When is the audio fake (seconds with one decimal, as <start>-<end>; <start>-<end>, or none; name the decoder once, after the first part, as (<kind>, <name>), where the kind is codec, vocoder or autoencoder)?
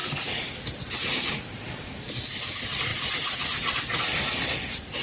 none